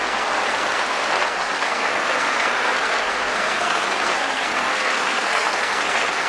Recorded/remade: remade